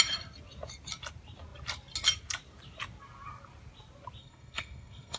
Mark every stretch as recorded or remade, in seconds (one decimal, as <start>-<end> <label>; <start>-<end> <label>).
0.0-4.2 recorded; 4.2-5.2 remade